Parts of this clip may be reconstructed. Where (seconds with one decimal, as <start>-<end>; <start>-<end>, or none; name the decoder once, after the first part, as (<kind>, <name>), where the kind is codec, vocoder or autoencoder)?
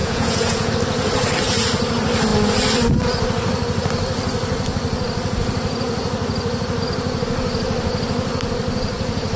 0.0-0.7 (vocoder, Vocos)